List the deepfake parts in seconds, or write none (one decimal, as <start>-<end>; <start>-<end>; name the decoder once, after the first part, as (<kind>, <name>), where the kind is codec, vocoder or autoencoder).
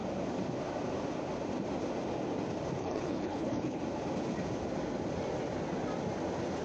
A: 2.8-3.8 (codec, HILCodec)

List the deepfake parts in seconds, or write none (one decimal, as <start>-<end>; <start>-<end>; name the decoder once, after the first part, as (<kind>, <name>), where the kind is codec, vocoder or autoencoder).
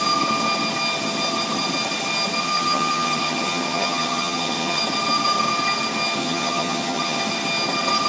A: 2.4-4.8 (vocoder, HiFi-GAN); 6.2-7.2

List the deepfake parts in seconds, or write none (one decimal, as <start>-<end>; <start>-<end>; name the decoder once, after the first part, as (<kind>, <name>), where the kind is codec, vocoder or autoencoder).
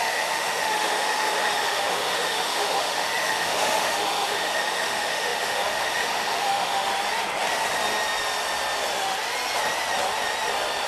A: 0.0-6.9 (autoencoder, DAC-VAE)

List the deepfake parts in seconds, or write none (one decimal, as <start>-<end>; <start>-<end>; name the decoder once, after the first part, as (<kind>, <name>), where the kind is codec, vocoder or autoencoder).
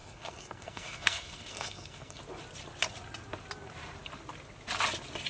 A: 0.0-2.2 (codec, SNAC)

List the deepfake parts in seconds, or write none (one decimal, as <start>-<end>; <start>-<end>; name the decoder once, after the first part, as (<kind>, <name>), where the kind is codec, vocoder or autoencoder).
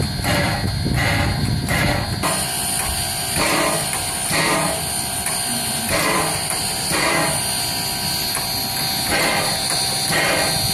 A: 1.4-1.9 (vocoder, BigVGAN v2)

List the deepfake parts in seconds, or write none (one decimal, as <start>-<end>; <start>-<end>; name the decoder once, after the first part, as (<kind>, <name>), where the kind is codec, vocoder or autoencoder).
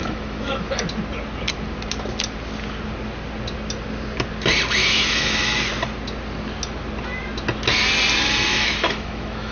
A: 0.0-0.8 (autoencoder, DAC-VAE); 4.8-5.6; 8.5-9.5